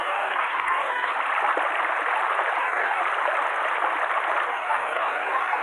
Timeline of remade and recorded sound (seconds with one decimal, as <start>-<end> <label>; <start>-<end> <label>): 0.0-1.1 remade; 1.1-2.6 recorded; 2.6-3.0 remade; 3.0-4.5 recorded; 4.5-5.6 remade